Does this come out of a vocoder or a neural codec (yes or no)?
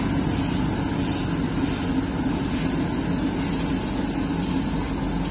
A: no